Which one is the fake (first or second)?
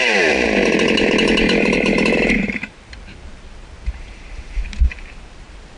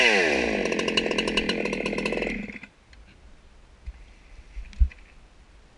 first